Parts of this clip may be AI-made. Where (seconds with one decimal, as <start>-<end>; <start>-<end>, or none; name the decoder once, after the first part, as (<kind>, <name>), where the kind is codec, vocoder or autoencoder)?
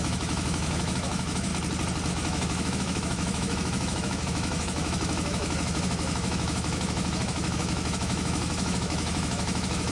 0.0-1.5 (autoencoder, DAC-VAE); 2.1-9.9